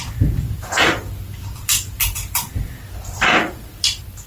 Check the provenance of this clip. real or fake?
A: fake